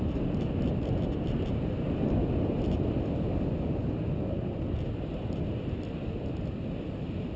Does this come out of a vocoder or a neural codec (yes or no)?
no